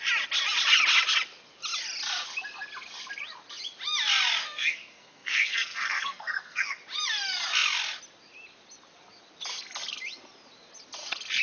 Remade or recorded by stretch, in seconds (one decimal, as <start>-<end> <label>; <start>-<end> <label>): 0.0-4.4 recorded; 4.4-6.8 remade; 6.8-11.4 recorded